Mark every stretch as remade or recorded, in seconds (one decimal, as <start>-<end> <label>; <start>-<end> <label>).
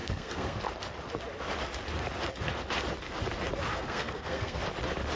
0.0-0.6 remade; 0.6-3.7 recorded; 3.7-4.6 remade; 4.6-5.2 recorded